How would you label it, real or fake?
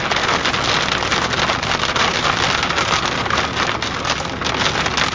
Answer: real